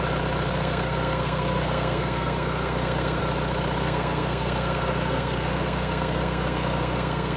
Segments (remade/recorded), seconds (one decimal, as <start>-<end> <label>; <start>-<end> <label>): 0.0-0.5 recorded; 0.5-3.2 remade; 3.2-3.8 recorded; 3.8-7.4 remade

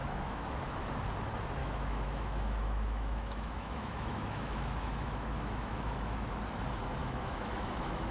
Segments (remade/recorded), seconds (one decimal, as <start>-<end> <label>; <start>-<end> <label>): 0.0-0.9 remade; 0.9-1.6 recorded; 1.6-6.3 remade; 6.3-7.0 recorded; 7.0-8.1 remade